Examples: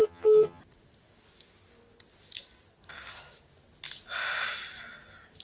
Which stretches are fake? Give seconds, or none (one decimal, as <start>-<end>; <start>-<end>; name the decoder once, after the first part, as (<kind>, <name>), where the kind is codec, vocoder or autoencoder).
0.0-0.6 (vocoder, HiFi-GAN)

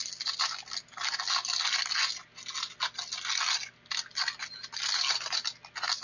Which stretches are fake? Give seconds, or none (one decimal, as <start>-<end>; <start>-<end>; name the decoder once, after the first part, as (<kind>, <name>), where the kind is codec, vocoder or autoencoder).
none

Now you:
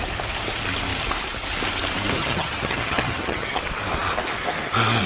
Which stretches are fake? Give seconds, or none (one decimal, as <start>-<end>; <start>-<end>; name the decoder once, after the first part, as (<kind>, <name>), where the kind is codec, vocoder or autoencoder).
2.2-3.6 (vocoder, HiFi-GAN)